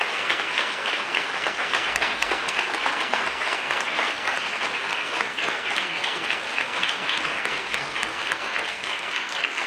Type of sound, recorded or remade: remade